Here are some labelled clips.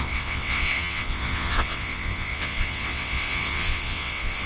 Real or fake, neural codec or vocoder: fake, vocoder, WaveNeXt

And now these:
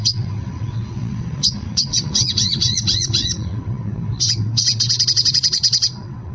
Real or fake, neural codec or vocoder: fake, vocoder, WaveNeXt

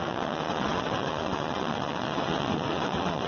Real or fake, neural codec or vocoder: fake, vocoder, WaveNeXt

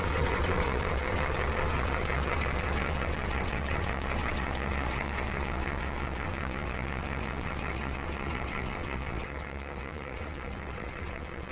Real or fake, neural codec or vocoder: fake, vocoder, WaveNeXt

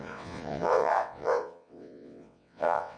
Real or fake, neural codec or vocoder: fake, vocoder, WaveNeXt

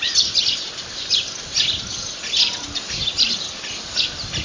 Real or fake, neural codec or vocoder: real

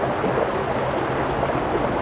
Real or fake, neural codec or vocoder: real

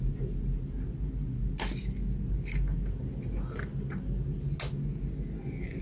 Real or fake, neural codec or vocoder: real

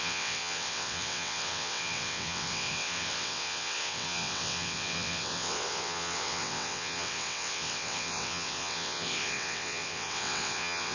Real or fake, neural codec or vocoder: fake, vocoder, WaveNeXt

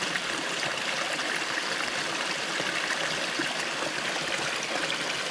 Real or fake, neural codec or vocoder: real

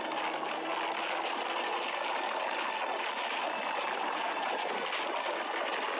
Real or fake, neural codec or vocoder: real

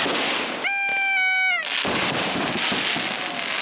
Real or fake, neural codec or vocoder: real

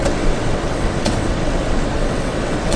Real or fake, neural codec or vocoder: fake, vocoder, WaveNeXt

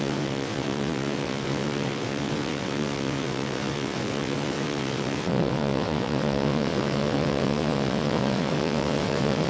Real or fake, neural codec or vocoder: fake, vocoder, WaveNeXt